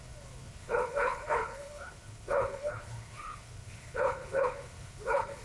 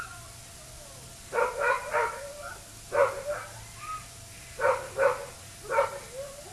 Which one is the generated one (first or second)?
first